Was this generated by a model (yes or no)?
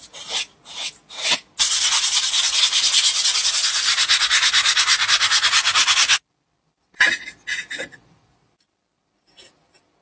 no